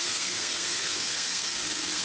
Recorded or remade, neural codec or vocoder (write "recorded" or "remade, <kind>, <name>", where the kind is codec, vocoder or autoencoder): remade, codec, SNAC